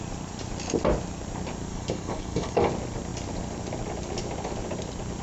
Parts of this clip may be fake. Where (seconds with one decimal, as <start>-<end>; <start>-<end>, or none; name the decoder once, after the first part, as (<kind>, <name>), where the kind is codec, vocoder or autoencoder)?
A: 1.7-2.7 (codec, DAC)